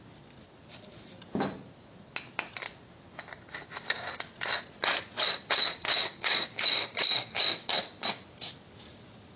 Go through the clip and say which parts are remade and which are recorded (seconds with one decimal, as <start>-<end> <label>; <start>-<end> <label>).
0.0-5.7 recorded; 5.7-7.7 remade; 7.7-9.4 recorded